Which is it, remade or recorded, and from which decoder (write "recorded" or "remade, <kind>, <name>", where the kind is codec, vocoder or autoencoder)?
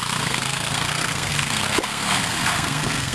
remade, codec, SNAC